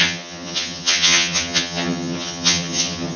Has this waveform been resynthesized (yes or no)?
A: yes